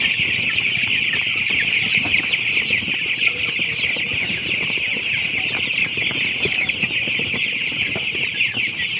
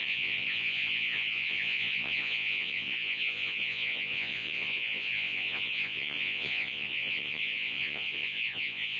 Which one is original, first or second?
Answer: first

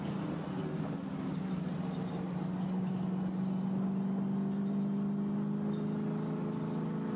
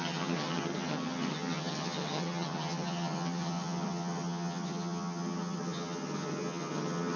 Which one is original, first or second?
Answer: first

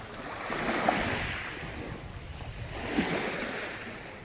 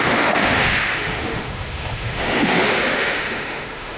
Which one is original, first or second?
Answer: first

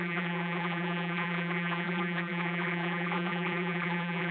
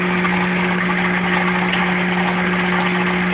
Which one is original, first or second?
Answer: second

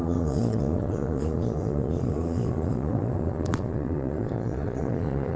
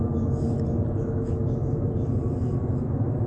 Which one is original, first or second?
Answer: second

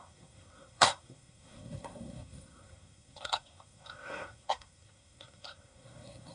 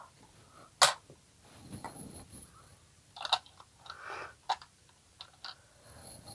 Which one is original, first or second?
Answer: second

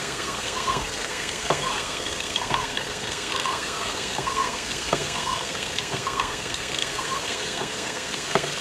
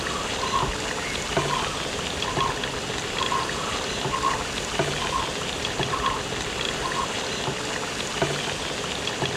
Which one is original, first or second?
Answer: second